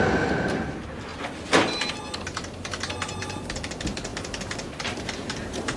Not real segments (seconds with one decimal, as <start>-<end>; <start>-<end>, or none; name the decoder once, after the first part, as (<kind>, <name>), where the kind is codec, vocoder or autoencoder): 1.1-1.9 (vocoder, BigVGAN v2); 4.1-5.1